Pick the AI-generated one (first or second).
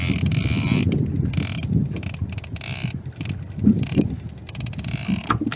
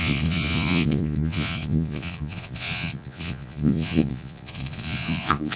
second